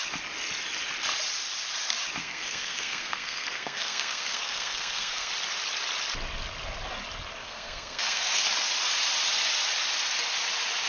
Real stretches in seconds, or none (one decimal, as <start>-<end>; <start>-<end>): 0.0-2.2; 5.3-7.4; 8.4-10.9